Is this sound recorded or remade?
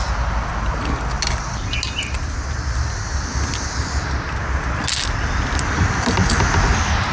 recorded